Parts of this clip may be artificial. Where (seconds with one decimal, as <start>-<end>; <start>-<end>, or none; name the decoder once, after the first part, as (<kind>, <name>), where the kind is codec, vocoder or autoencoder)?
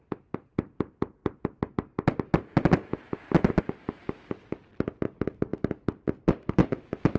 none